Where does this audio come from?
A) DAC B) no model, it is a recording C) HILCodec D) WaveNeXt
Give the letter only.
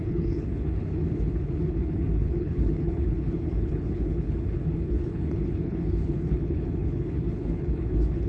C